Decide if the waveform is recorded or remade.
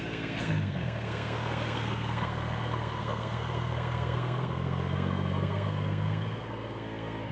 remade